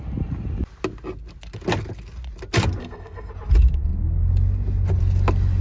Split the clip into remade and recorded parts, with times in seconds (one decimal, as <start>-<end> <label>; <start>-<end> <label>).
0.0-2.8 recorded; 2.8-3.3 remade; 3.3-5.6 recorded